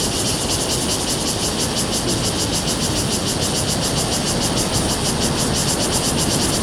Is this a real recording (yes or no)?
yes